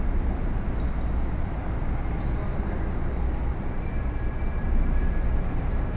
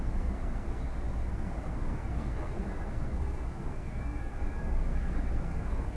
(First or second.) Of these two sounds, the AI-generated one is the second